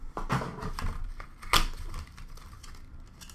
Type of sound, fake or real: real